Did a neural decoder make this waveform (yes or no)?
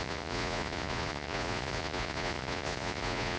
yes